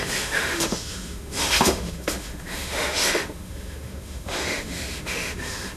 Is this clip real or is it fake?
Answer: fake